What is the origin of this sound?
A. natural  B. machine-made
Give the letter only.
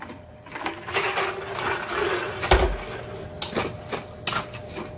A